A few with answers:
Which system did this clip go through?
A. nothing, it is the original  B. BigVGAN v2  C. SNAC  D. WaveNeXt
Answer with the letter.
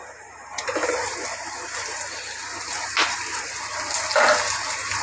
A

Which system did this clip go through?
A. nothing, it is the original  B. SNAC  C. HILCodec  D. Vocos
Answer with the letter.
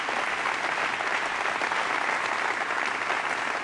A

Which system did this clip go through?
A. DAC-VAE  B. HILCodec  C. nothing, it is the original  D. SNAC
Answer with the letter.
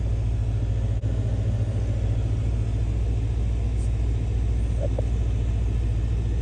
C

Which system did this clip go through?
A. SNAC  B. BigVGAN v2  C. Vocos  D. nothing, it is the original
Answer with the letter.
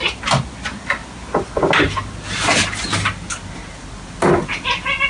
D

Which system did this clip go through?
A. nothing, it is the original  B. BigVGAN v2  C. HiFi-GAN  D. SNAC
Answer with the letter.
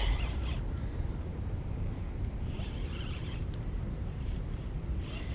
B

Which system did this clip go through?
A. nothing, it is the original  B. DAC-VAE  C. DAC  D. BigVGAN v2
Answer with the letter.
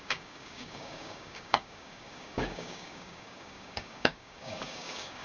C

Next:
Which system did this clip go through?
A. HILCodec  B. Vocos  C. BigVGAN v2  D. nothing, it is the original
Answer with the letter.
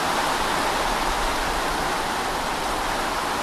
D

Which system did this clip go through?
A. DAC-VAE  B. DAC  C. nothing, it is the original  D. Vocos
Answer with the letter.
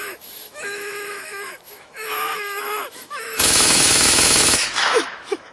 A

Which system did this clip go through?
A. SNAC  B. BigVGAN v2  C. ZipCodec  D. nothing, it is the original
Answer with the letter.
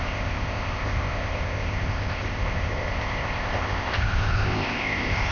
C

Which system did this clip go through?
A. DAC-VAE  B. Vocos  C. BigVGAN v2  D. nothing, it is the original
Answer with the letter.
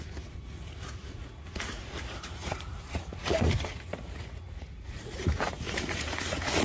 B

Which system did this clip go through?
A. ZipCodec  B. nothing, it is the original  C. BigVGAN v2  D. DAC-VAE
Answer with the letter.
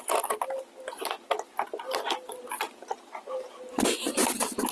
B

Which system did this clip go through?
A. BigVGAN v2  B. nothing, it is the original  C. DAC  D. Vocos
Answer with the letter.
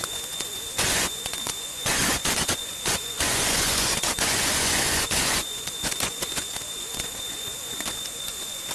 D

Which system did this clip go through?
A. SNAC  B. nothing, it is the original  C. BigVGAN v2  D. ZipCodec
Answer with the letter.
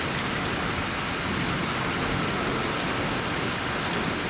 B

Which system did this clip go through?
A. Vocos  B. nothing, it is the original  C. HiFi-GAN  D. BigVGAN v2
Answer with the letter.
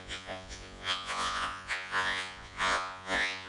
A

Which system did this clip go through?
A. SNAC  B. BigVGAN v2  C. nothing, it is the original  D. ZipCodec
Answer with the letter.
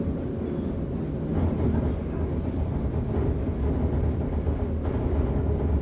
C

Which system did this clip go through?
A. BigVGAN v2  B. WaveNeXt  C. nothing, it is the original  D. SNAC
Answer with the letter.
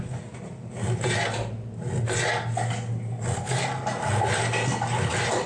C